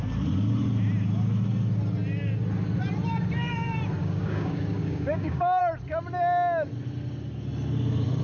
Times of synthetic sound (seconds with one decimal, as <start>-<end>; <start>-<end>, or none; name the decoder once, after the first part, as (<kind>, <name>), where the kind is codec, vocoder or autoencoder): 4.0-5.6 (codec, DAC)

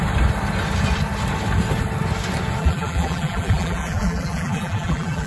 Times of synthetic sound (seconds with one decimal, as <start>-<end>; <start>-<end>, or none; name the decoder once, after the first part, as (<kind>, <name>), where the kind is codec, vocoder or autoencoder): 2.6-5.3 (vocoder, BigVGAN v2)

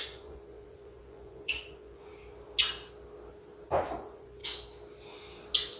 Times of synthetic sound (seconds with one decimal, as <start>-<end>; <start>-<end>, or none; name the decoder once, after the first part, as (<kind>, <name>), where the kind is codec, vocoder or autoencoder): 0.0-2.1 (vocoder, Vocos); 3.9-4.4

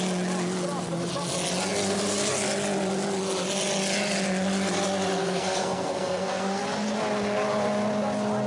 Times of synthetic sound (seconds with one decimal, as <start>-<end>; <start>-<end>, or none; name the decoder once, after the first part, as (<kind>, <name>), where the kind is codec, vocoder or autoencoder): 5.2-6.6 (codec, SNAC)

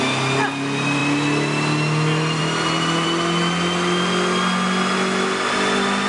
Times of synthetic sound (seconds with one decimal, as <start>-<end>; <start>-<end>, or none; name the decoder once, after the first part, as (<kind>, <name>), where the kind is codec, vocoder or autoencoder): none